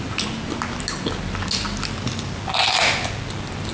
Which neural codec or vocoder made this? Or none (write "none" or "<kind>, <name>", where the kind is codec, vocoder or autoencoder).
none